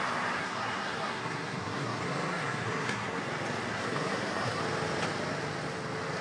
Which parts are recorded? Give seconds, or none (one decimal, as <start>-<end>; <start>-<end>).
0.0-0.4; 3.2-3.7; 4.6-6.2